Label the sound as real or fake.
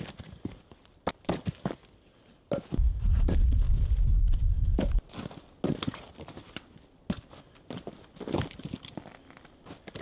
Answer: real